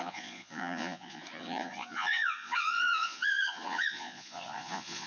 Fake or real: fake